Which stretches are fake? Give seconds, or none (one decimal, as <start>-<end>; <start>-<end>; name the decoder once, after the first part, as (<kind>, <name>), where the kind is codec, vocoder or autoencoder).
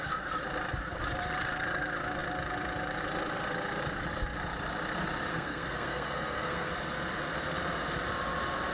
5.3-6.7 (codec, SNAC)